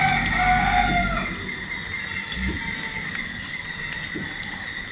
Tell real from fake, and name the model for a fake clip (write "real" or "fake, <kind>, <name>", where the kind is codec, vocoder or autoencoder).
real